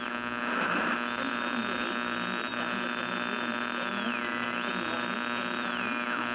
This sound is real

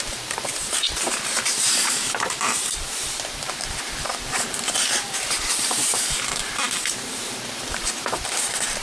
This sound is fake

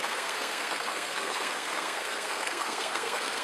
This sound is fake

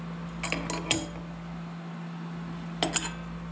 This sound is real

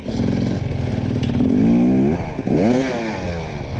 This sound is real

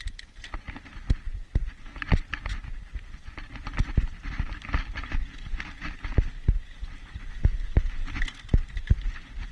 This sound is real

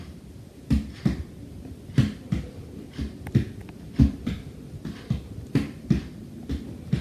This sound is fake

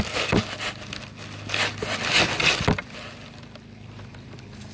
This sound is real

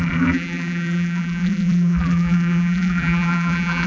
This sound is fake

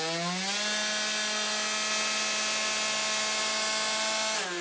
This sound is real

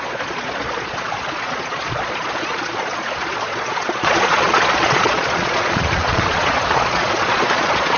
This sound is fake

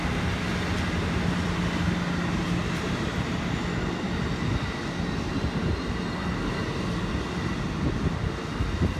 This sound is real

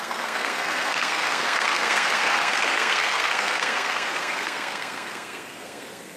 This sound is fake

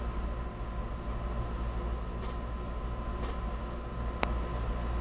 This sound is real